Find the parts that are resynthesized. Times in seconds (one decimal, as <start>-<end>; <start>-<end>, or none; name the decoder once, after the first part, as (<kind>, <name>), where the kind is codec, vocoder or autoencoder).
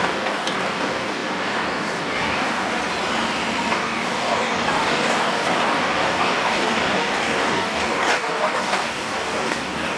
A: 0.0-2.8 (codec, DAC); 3.7-10.0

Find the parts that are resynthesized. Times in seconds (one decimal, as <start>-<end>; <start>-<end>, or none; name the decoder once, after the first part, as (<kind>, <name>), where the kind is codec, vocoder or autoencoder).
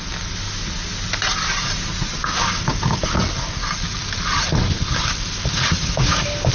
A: 2.2-3.2 (codec, DAC); 5.6-6.5